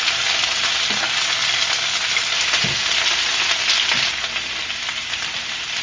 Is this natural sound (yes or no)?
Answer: yes